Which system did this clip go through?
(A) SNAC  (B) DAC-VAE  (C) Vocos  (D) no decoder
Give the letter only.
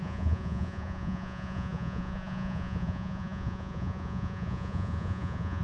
C